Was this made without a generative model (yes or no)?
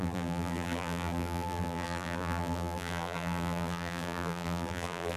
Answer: no